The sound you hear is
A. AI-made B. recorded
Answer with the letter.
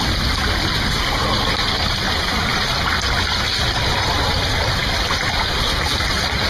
B